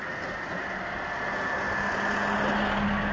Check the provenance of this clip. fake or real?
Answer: real